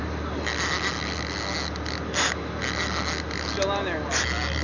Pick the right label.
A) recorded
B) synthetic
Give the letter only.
A